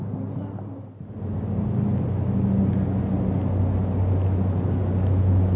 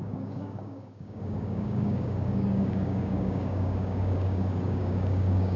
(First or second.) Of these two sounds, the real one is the first